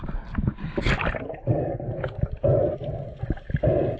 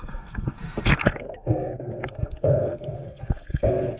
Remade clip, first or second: second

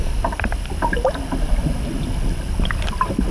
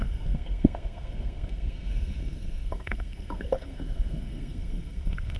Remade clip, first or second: second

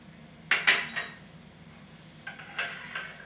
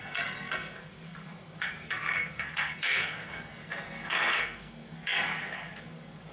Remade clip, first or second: second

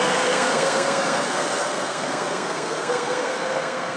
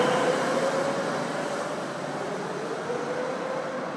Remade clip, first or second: first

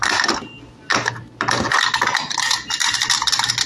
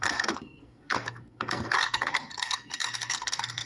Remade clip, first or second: second